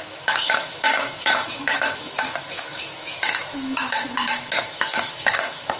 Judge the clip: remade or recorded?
remade